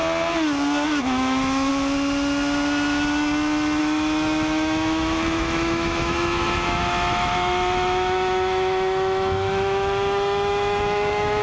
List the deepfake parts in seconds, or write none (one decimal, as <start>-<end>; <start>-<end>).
1.0-1.7; 3.8-11.4